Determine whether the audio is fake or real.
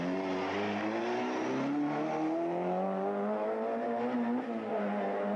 real